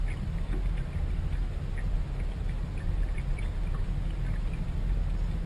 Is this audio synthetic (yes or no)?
no